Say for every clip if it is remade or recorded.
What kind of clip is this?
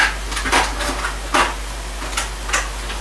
recorded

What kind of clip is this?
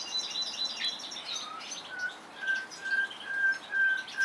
recorded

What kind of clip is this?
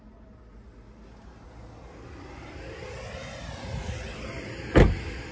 recorded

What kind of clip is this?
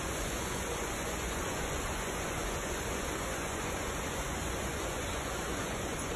remade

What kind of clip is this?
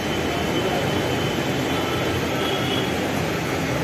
recorded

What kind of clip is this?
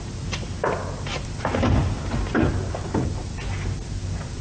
recorded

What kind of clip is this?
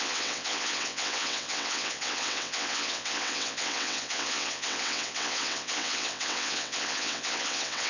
remade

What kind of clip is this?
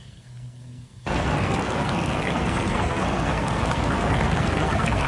remade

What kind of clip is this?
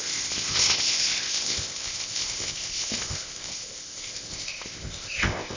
remade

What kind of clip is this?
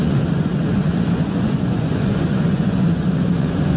remade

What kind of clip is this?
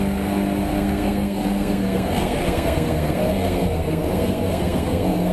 remade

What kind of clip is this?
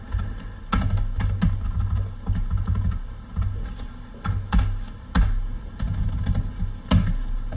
recorded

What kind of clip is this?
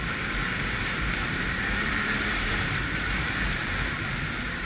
remade